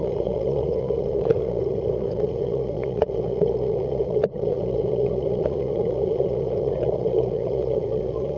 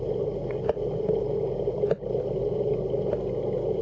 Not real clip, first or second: first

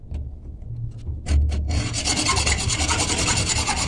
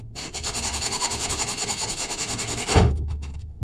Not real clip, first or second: second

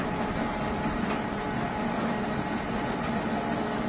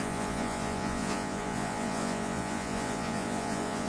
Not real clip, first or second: second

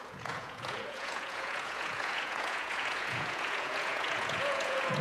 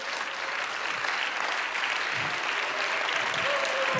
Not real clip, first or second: first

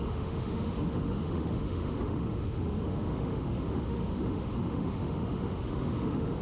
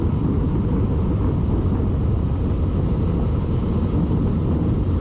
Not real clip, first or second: first